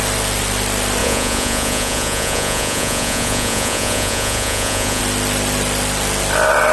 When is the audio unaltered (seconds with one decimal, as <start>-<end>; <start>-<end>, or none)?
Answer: 0.0-1.0; 5.0-6.7